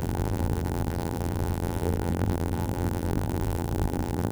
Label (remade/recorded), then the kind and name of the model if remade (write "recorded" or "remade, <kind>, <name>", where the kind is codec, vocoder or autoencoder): remade, vocoder, BigVGAN v2